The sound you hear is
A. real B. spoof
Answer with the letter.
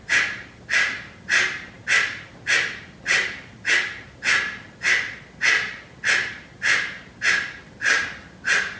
A